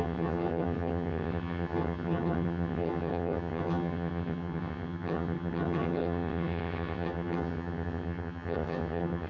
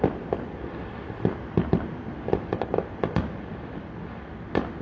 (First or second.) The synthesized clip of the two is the first